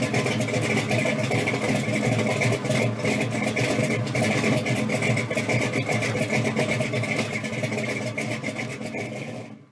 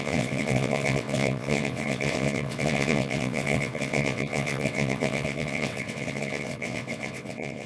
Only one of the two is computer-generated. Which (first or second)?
second